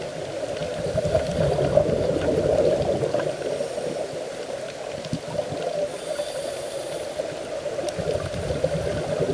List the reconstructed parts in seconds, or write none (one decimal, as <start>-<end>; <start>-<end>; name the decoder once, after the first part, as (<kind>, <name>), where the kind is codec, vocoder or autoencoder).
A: 5.9-7.6 (vocoder, BigVGAN v2)